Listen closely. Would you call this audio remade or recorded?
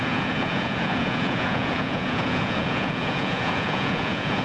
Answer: remade